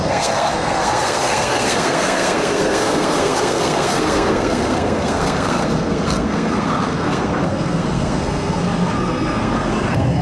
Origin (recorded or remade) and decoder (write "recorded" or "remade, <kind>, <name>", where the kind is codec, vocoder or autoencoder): remade, codec, SNAC